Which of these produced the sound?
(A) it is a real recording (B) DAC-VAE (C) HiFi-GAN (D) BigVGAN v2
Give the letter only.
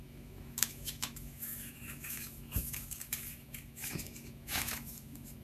B